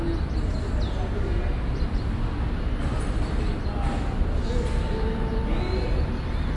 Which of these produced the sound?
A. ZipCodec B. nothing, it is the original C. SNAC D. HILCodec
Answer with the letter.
B